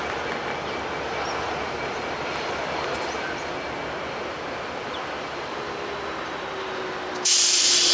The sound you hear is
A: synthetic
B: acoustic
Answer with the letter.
B